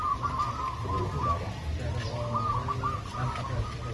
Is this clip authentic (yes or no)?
yes